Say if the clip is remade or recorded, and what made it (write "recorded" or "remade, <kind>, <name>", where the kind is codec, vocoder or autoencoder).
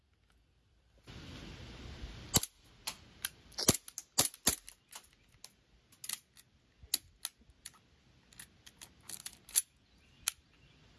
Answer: recorded